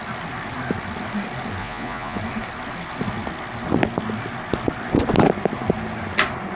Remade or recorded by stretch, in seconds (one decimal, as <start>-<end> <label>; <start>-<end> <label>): 0.0-1.6 recorded; 1.6-2.2 remade; 2.2-6.5 recorded